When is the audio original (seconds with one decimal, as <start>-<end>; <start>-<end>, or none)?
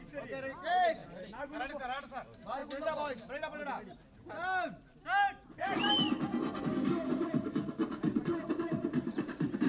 2.6-6.6